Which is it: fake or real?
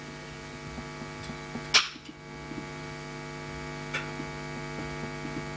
real